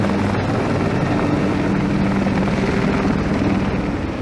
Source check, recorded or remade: recorded